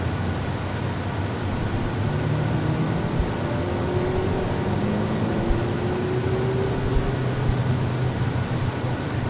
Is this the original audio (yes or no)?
yes